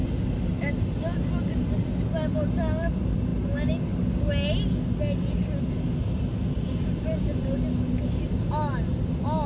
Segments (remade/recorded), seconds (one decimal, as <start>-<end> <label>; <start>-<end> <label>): 0.0-9.5 recorded